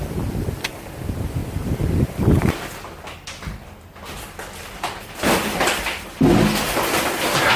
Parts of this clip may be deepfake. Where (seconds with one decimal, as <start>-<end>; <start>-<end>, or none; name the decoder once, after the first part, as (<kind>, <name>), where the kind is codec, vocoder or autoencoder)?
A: none